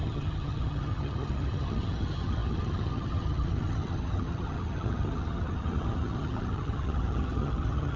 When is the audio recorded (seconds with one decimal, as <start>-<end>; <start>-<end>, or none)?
none